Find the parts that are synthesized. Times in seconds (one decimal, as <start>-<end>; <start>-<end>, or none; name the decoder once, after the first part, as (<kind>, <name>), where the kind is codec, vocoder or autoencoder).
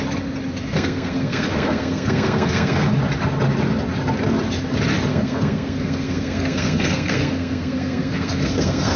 0.6-2.9 (codec, SNAC); 5.1-9.0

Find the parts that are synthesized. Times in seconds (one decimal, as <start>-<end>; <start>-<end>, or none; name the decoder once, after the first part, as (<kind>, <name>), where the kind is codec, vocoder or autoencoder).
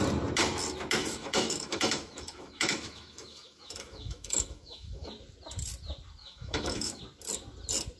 1.0-5.1 (autoencoder, DAC-VAE); 6.2-7.0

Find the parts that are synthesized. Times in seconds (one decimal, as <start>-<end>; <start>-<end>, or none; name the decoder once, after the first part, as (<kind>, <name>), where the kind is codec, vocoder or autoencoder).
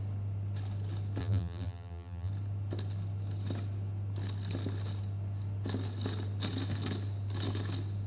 1.2-2.3 (vocoder, BigVGAN v2)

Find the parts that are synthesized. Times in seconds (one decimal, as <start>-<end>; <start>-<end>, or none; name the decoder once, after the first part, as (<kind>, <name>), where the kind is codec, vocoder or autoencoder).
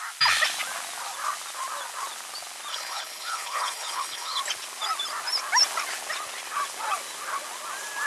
2.7-4.4 (codec, HILCodec)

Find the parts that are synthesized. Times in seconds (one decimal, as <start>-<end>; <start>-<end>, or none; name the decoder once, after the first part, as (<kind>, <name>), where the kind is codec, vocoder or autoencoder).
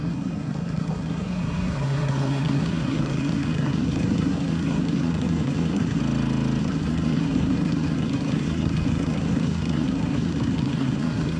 0.0-6.0 (codec, SNAC); 6.6-11.4